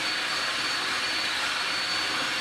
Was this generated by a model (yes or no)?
no